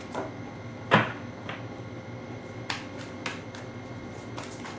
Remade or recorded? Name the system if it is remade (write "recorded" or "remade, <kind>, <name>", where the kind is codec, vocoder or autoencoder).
remade, vocoder, BigVGAN v2